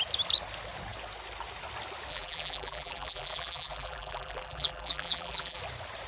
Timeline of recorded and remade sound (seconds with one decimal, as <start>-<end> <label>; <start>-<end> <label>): 0.0-2.1 recorded; 2.1-5.6 remade; 5.6-6.1 recorded